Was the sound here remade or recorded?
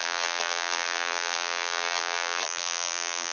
remade